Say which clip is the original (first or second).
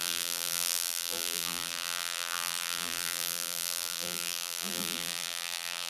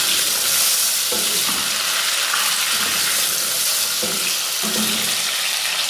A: second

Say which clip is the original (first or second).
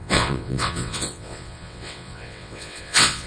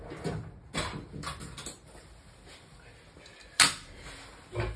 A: second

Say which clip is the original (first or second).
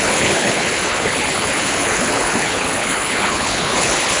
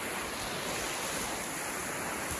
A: second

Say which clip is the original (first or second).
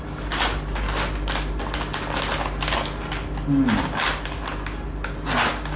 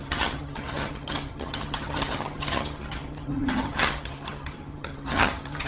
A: first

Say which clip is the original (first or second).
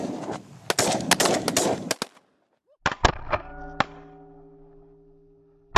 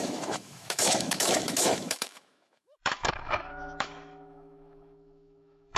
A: first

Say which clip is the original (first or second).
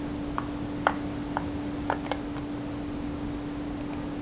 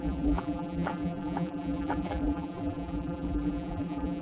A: first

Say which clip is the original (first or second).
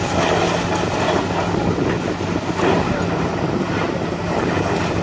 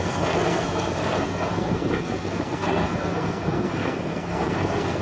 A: first